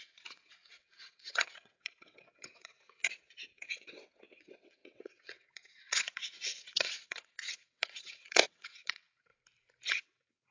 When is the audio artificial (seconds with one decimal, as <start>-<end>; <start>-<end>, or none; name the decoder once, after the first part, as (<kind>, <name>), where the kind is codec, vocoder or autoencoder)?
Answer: 0.0-9.3 (vocoder, WaveNeXt); 9.9-10.5